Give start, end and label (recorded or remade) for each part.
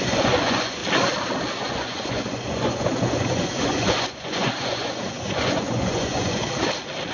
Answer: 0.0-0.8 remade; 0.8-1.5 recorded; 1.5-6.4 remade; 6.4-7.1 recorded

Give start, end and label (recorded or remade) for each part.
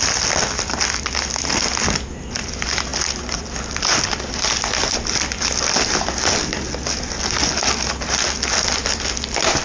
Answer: 0.0-9.6 recorded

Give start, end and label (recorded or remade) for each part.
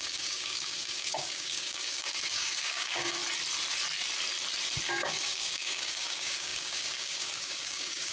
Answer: 0.0-3.2 remade; 3.2-4.9 recorded; 4.9-8.1 remade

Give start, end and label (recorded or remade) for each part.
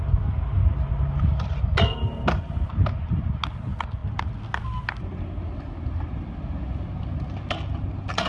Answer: 0.0-8.3 recorded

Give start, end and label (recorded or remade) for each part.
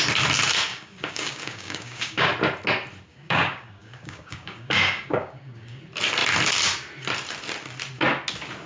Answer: 0.0-0.7 recorded; 0.7-2.3 remade; 2.3-3.1 recorded; 3.1-5.8 remade; 5.8-8.7 recorded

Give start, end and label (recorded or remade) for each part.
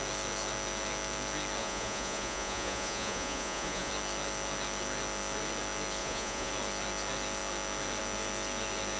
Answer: 0.0-1.6 recorded; 1.6-3.9 remade; 3.9-6.0 recorded; 6.0-6.5 remade; 6.5-9.0 recorded